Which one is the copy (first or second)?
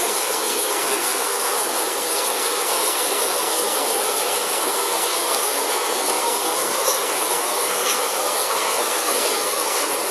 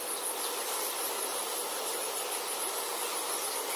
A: first